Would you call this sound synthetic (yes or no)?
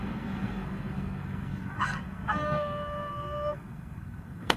yes